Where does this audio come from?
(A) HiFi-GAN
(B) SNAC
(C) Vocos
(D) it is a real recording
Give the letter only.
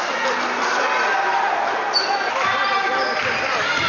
D